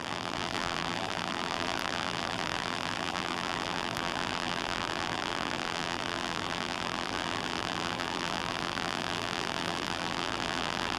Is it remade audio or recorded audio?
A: remade